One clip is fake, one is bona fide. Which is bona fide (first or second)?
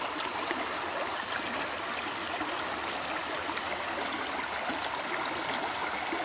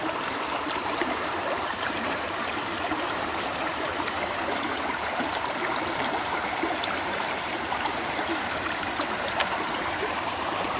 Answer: first